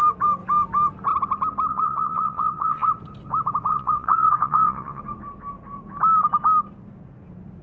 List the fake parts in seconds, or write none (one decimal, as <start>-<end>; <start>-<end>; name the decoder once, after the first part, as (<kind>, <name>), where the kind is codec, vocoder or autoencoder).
1.7-2.9 (vocoder, WaveNeXt); 3.7-5.0